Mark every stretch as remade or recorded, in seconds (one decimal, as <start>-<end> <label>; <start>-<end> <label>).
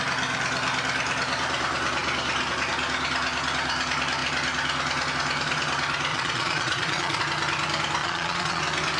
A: 0.0-6.1 recorded; 6.1-7.2 remade; 7.2-8.0 recorded; 8.0-8.6 remade; 8.6-9.0 recorded